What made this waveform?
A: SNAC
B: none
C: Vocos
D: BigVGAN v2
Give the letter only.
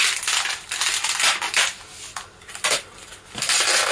B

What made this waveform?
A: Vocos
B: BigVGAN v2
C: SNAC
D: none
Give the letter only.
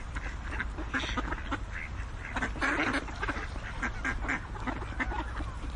D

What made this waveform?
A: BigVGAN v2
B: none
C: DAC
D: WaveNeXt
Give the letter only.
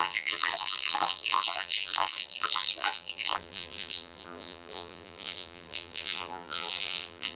A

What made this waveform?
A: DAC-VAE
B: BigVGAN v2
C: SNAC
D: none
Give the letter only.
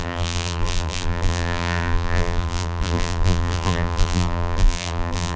B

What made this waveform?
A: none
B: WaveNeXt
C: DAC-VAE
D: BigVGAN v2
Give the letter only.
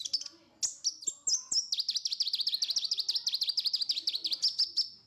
A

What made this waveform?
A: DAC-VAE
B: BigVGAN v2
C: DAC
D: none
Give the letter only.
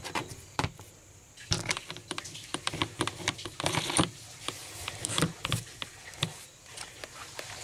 B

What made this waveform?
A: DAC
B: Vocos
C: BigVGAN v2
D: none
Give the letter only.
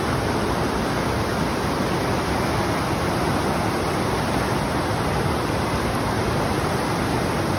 D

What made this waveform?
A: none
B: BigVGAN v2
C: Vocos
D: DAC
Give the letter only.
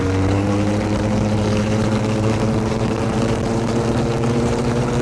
B